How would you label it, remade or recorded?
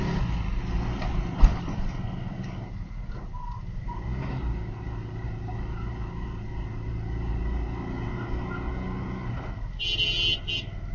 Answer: recorded